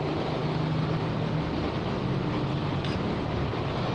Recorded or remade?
recorded